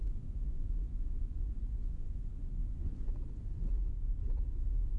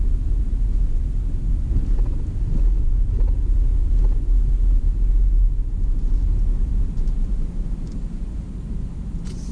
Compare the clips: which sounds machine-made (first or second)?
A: first